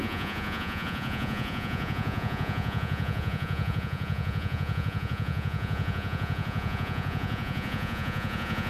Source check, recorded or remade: remade